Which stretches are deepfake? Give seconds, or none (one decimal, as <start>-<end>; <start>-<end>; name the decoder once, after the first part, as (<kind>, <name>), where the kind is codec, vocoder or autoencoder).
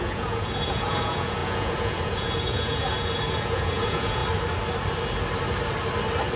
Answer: 0.0-4.2 (vocoder, Vocos)